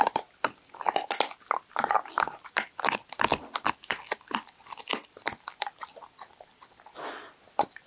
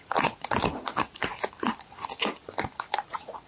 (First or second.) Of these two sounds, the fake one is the second